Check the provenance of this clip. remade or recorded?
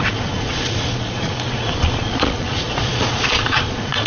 remade